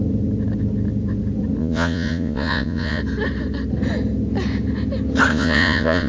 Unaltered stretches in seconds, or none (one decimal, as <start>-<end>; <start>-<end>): 0.0-1.6; 3.0-5.3